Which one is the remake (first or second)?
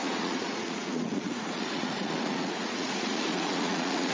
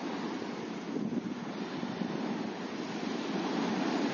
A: first